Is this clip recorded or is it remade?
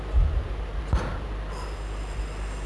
recorded